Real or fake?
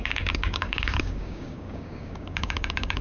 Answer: fake